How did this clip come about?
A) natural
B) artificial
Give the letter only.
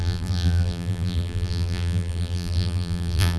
B